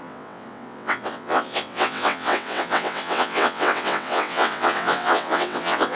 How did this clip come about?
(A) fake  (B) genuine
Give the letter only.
A